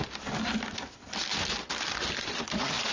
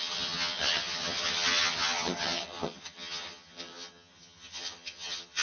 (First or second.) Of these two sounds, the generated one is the second